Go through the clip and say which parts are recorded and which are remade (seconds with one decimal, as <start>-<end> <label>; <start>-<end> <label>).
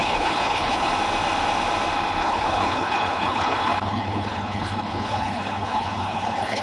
0.0-0.9 remade; 0.9-2.2 recorded; 2.2-6.6 remade